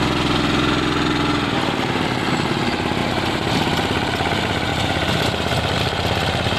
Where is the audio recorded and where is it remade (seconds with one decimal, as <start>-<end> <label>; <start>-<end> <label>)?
0.0-3.0 recorded; 3.0-3.5 remade; 3.5-4.7 recorded; 4.7-5.8 remade; 5.8-6.6 recorded